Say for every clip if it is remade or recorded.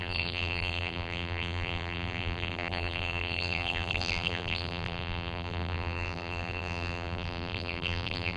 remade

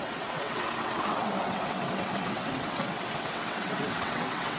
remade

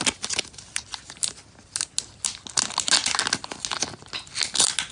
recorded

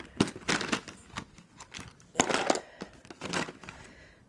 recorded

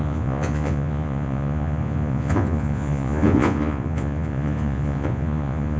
remade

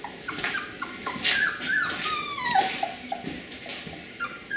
recorded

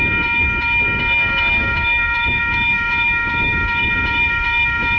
remade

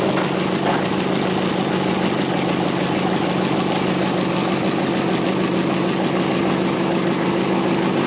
recorded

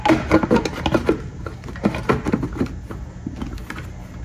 recorded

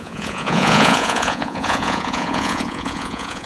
remade